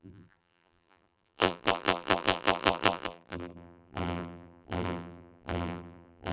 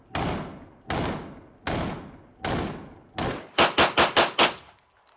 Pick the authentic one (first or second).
second